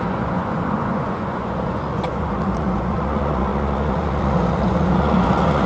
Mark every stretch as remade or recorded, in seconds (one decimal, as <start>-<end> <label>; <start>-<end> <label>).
0.0-5.7 remade